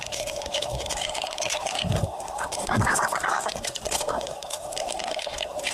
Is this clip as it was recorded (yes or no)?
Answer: no